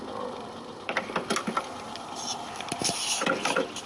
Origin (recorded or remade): recorded